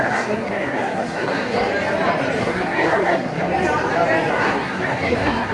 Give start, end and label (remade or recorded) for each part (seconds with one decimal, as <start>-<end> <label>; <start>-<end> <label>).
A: 0.0-1.7 remade; 1.7-2.4 recorded; 2.4-3.5 remade; 3.5-4.3 recorded; 4.3-5.5 remade